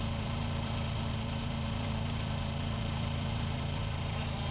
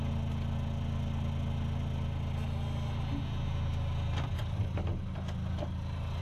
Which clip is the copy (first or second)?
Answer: first